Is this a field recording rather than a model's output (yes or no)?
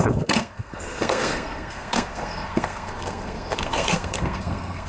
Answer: no